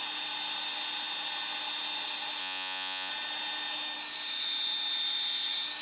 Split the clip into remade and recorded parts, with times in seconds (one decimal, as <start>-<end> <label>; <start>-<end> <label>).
0.0-2.4 recorded; 2.4-3.1 remade; 3.1-5.8 recorded